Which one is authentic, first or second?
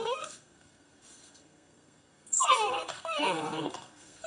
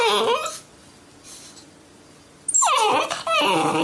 second